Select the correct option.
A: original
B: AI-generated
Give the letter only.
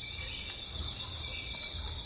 A